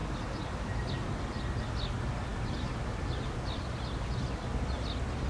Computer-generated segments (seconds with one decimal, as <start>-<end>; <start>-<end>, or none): none